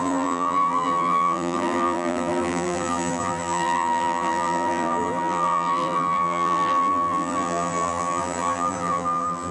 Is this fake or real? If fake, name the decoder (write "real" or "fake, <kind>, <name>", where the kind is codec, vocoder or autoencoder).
fake, vocoder, BigVGAN v2